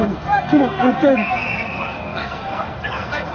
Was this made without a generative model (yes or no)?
no